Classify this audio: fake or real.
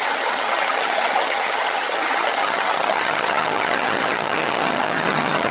fake